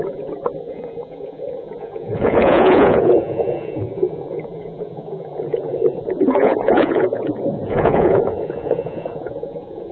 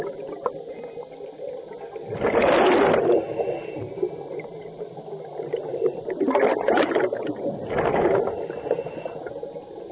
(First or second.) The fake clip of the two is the first